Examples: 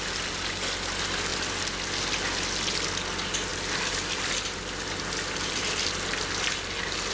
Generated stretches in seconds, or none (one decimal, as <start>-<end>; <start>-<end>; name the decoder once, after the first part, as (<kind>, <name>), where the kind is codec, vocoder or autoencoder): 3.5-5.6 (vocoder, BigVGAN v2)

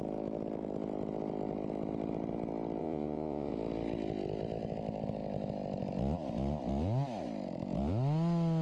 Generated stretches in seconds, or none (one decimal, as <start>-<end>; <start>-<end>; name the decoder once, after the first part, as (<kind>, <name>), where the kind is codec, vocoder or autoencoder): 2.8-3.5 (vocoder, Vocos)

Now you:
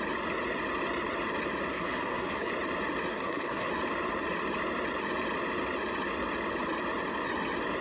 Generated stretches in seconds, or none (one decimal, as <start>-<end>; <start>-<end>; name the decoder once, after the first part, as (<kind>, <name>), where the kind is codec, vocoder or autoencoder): 1.7-2.5 (codec, SNAC); 3.1-3.7

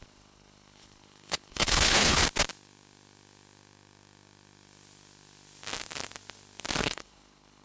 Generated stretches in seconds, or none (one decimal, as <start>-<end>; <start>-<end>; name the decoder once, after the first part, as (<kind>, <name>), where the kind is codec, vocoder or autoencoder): 0.0-2.2 (codec, HILCodec); 6.8-7.6

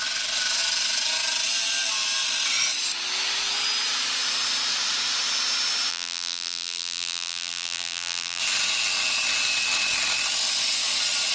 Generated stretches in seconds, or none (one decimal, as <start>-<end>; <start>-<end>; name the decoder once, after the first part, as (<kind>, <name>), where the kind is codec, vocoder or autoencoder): 5.9-8.4 (vocoder, BigVGAN v2)

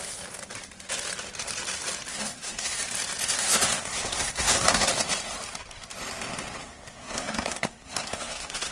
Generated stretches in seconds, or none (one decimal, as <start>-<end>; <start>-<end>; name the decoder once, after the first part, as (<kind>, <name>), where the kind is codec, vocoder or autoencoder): 2.1-2.8 (codec, SNAC); 3.4-4.9; 6.6-8.7